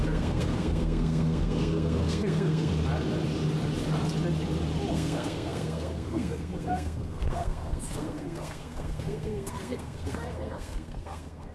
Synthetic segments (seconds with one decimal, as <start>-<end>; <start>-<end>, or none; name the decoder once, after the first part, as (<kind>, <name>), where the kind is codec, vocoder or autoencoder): 0.0-2.7 (codec, SNAC); 4.9-11.5